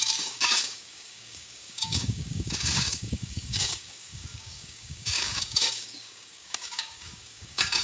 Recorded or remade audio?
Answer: remade